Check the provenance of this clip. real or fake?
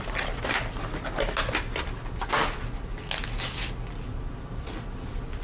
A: real